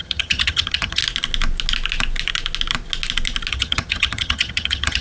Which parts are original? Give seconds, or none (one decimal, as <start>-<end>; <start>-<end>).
1.0-3.5

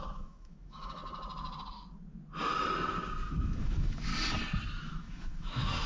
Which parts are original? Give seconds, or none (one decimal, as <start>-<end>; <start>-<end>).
1.0-3.3; 4.1-4.9

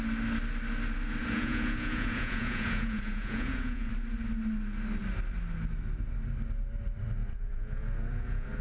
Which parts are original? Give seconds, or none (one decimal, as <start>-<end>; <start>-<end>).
0.0-1.2; 3.9-7.2